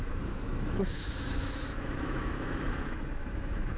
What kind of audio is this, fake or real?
fake